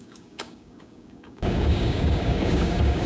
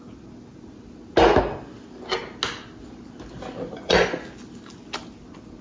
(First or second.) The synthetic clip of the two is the first